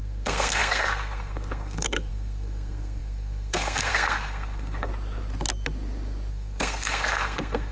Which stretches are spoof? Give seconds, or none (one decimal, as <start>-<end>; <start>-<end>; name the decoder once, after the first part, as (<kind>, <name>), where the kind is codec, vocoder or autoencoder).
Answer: 0.0-4.9 (codec, SNAC); 6.3-7.7